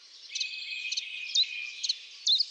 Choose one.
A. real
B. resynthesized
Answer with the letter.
A